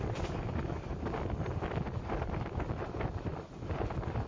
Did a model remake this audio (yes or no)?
no